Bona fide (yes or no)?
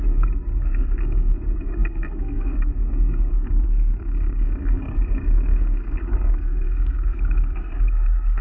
no